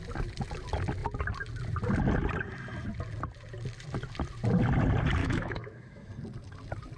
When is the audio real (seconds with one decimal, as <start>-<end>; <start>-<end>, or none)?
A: 0.0-5.2; 6.1-7.0